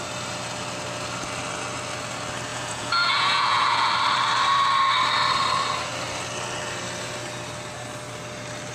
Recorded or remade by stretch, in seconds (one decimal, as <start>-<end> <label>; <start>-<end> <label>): 0.0-2.5 recorded; 2.5-3.9 remade; 3.9-8.7 recorded